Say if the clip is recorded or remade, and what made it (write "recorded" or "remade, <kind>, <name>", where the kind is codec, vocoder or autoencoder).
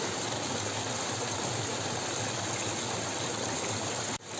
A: recorded